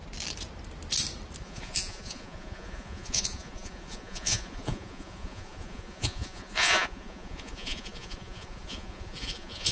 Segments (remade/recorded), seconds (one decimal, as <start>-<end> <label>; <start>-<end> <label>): 0.0-1.4 recorded; 1.4-9.7 remade